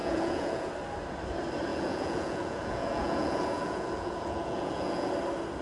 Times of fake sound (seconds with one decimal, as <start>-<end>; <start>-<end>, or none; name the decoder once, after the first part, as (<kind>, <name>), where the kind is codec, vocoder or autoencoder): 0.0-0.7 (vocoder, Vocos); 1.7-5.1